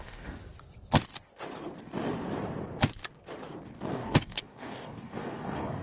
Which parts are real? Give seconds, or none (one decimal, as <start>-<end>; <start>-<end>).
0.4-3.9